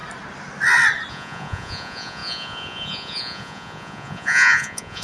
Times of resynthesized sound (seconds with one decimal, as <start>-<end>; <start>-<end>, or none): 1.1-5.0